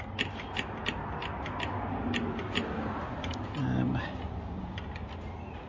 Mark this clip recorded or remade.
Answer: recorded